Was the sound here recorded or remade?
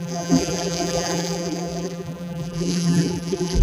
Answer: remade